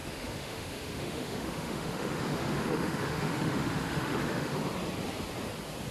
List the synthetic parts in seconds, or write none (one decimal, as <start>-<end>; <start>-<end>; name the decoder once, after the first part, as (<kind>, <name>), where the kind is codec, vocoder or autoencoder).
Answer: 0.0-4.6 (autoencoder, DAC-VAE)